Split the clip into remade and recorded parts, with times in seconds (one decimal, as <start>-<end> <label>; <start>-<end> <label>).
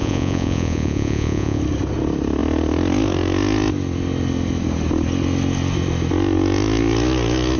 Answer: 0.0-1.6 remade; 1.6-7.6 recorded